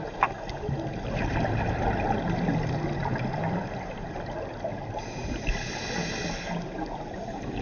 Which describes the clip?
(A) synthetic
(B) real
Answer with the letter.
B